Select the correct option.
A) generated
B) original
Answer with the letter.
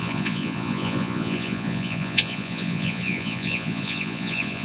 A